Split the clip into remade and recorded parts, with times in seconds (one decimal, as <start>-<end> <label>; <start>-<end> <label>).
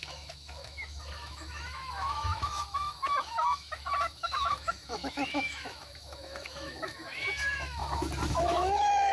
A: 0.0-7.8 remade; 7.8-8.3 recorded; 8.3-9.1 remade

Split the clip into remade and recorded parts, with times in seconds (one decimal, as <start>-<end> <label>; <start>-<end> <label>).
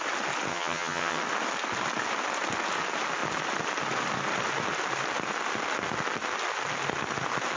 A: 0.0-0.5 recorded; 0.5-1.2 remade; 1.2-7.6 recorded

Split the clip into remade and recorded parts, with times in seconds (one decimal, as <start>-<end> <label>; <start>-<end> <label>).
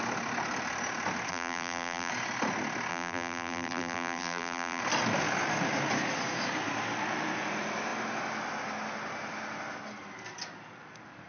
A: 0.0-1.3 recorded; 1.3-2.1 remade; 2.1-2.9 recorded; 2.9-4.8 remade; 4.8-11.3 recorded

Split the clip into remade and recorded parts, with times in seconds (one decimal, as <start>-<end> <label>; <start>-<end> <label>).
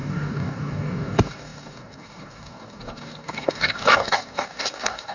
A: 0.0-5.1 remade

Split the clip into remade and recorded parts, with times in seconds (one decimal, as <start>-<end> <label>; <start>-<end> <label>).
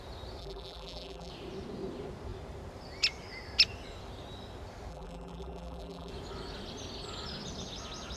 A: 0.0-0.4 recorded; 0.4-1.3 remade; 1.3-4.9 recorded; 4.9-6.1 remade; 6.1-8.2 recorded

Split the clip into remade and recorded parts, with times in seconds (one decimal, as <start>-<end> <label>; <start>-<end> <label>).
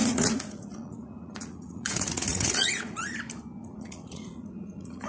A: 0.0-3.1 remade; 3.1-3.6 recorded; 3.6-5.1 remade